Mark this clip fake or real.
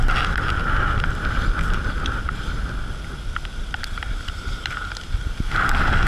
real